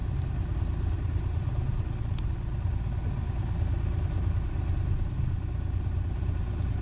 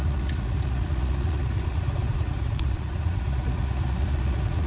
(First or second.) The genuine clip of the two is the first